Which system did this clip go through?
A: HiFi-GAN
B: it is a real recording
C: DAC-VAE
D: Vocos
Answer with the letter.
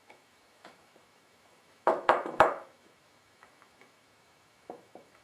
C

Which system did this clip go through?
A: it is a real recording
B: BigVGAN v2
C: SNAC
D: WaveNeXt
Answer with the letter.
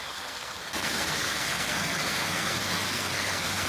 C